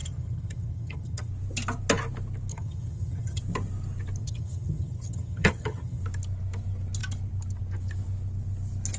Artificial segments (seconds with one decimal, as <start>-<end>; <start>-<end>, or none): 0.0-1.3; 2.5-3.4; 4.2-6.0